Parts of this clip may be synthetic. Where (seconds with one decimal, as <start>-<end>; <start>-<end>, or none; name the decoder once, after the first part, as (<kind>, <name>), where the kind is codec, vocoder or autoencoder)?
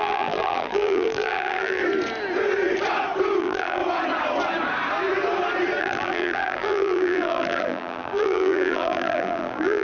0.0-1.8 (vocoder, BigVGAN v2); 3.4-3.8; 5.8-9.8